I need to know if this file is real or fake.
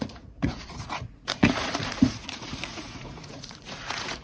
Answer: fake